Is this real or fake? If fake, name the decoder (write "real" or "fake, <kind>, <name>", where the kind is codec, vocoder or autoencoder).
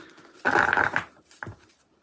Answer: real